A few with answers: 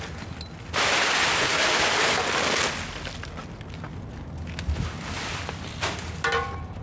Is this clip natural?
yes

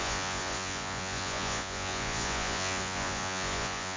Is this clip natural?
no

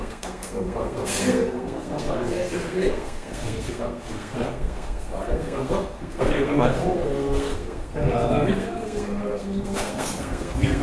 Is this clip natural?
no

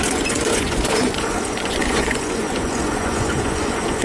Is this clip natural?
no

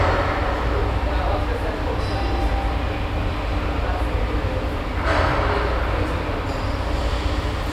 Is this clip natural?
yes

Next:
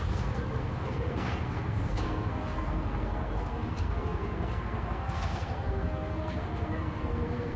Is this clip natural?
no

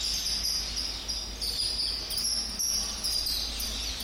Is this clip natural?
yes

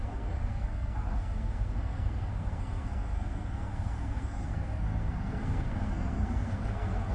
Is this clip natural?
no